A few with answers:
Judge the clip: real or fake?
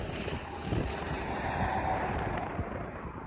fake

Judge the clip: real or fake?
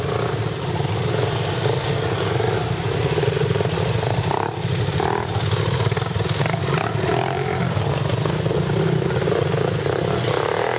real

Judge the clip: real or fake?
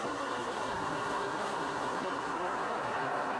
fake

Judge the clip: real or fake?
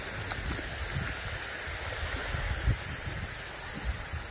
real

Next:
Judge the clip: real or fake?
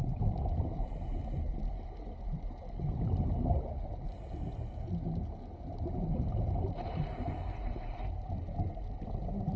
real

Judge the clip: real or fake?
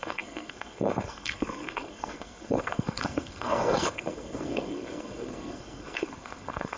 fake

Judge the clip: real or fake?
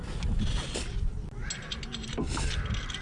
real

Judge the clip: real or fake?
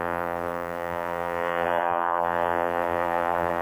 fake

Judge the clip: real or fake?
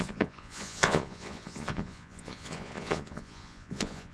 fake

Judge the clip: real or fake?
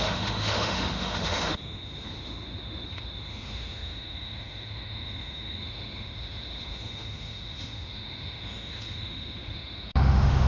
fake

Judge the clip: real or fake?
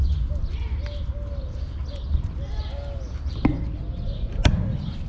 real